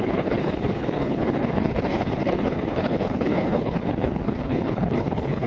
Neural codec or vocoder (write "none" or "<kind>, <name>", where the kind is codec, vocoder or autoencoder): codec, HILCodec